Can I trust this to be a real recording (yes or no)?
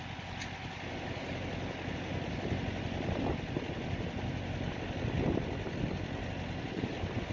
yes